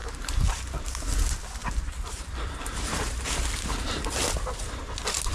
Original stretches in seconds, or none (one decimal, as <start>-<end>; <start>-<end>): 0.0-1.6; 4.8-5.3